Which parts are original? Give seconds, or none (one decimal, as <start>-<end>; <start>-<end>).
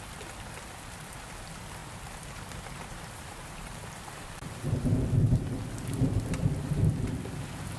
0.0-1.8; 4.6-7.8